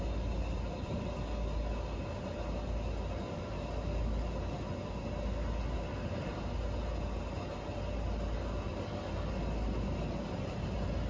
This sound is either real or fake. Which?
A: real